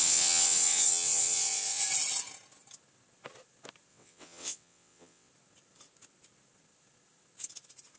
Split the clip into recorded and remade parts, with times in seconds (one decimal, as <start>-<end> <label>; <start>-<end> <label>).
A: 0.0-1.8 remade; 1.8-3.9 recorded; 3.9-5.3 remade; 5.3-8.0 recorded